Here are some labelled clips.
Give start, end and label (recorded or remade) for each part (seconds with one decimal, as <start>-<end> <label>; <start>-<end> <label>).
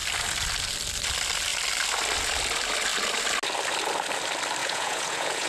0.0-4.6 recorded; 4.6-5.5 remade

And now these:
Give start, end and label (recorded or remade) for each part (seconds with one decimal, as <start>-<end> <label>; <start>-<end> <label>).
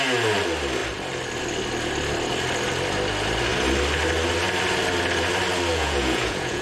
0.0-5.7 recorded; 5.7-6.6 remade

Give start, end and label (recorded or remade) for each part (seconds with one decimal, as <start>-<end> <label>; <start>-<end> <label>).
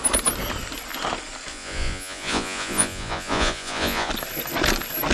0.0-1.5 recorded; 1.5-4.1 remade; 4.1-5.1 recorded